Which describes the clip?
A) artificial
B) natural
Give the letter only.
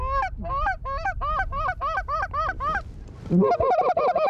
B